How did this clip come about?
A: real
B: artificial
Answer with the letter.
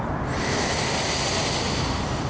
A